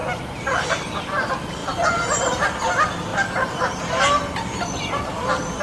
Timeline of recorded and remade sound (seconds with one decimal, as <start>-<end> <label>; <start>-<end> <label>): 0.0-1.6 recorded; 1.6-2.4 remade; 2.4-3.1 recorded; 3.1-5.6 remade